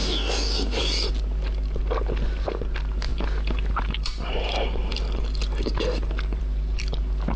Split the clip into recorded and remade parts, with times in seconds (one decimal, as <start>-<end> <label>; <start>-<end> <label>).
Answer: 0.0-0.8 remade; 0.8-7.4 recorded